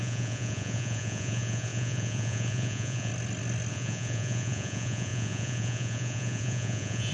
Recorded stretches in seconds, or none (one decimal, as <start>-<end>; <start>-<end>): 3.1-3.7